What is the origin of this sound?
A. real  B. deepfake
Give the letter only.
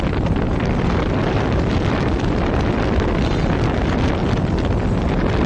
B